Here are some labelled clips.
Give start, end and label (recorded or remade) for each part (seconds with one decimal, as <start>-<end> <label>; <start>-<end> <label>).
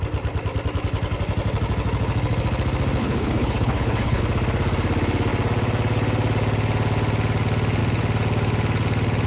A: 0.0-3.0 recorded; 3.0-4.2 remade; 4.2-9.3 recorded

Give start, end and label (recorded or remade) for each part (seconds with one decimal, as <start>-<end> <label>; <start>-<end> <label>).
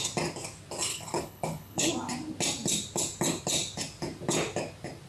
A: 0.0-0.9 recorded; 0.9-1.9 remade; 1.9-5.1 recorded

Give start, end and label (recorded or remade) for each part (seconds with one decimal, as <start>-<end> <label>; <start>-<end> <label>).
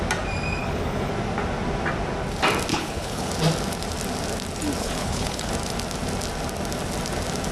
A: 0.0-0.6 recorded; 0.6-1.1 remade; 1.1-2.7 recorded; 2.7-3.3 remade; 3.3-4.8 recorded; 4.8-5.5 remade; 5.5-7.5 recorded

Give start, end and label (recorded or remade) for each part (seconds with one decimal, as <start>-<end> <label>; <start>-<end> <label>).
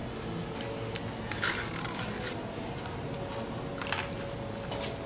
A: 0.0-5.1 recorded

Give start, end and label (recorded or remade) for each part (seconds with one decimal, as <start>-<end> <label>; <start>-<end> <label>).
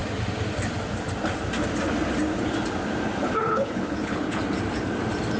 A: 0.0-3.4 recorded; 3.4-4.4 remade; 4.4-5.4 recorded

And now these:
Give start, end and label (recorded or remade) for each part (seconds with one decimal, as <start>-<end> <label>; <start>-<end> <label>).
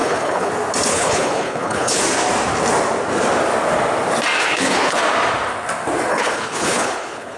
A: 0.0-0.5 remade; 0.5-0.9 recorded; 0.9-2.0 remade; 2.0-4.4 recorded; 4.4-5.0 remade; 5.0-6.1 recorded; 6.1-7.4 remade